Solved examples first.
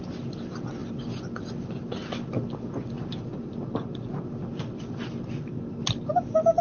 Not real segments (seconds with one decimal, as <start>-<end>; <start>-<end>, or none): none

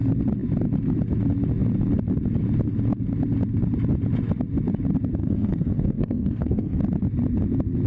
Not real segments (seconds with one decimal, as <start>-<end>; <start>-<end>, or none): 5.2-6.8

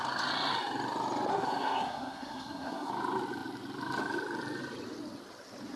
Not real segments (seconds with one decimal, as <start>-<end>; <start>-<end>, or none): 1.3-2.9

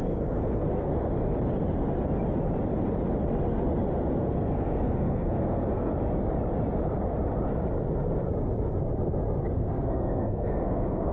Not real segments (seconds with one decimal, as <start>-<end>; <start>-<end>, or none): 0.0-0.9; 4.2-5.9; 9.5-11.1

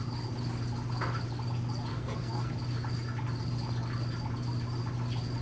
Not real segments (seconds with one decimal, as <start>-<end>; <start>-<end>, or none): 1.9-2.5

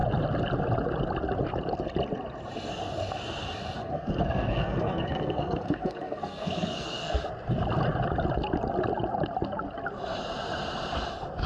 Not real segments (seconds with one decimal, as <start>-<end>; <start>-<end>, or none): 3.8-7.2

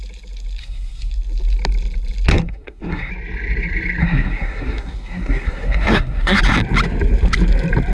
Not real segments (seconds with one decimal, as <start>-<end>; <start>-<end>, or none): 0.6-1.1; 2.3-3.1; 4.0-6.4